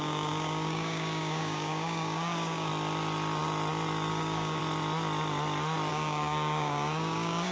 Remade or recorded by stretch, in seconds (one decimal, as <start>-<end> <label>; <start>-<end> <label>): 0.0-2.7 remade; 2.7-4.1 recorded; 4.1-4.6 remade; 4.6-5.9 recorded; 5.9-7.5 remade